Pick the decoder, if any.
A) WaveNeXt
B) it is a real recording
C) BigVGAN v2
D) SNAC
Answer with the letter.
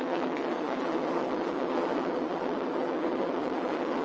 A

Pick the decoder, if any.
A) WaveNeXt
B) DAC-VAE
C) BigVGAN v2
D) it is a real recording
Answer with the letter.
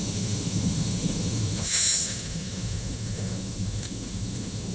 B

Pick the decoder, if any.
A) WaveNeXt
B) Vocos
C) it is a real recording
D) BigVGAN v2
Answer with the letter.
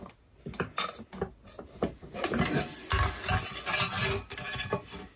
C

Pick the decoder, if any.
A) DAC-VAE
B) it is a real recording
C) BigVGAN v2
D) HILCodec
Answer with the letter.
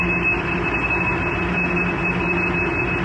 B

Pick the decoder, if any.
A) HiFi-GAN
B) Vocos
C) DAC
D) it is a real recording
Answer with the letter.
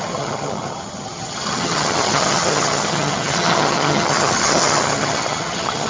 A